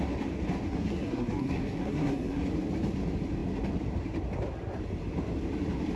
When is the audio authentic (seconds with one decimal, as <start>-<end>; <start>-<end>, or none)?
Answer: 0.0-0.7; 2.4-6.0